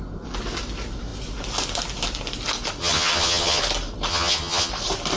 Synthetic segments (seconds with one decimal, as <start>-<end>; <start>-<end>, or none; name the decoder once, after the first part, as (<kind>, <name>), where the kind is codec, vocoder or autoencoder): 2.8-3.6 (vocoder, HiFi-GAN); 4.1-4.7